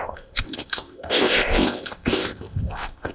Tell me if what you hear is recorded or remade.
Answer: remade